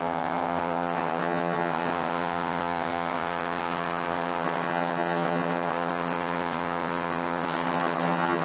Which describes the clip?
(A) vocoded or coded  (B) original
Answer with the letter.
A